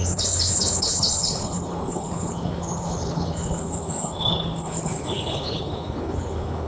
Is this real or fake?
fake